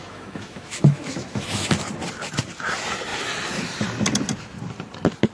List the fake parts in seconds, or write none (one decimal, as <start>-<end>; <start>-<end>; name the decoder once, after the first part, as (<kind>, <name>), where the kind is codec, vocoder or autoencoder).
0.0-1.7 (autoencoder, DAC-VAE)